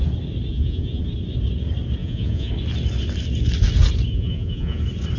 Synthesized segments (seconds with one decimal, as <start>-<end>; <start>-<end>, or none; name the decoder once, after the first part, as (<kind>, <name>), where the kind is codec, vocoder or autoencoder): 0.5-1.0 (vocoder, Vocos); 2.0-2.5; 4.1-4.8